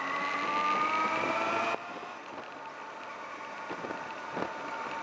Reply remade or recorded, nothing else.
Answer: recorded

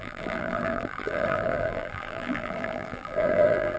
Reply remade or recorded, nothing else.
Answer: remade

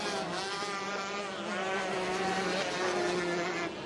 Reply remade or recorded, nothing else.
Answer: recorded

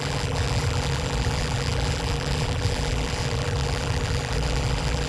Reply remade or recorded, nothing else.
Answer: remade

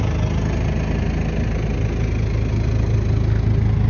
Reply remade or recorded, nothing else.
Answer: recorded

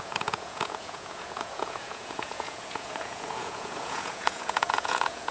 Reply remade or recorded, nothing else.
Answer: remade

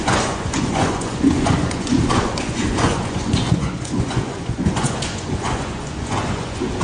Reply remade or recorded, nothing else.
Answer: remade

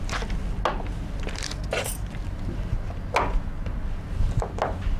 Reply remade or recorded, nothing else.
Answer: recorded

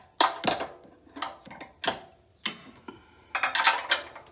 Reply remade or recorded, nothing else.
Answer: recorded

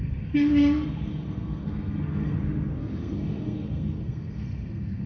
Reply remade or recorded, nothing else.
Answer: remade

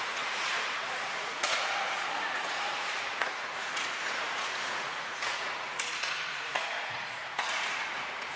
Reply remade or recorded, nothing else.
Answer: remade